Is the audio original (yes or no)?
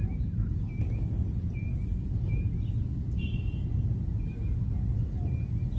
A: yes